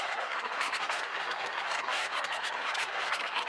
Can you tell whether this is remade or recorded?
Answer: remade